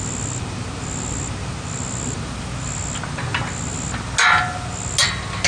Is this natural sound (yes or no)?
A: yes